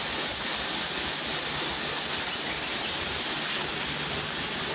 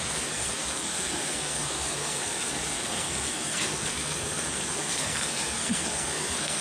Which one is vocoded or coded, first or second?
second